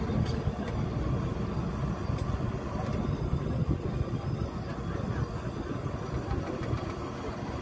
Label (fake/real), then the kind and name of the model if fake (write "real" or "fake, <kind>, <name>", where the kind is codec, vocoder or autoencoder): real